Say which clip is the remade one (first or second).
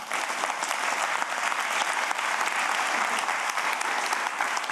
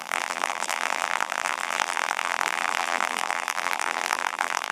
second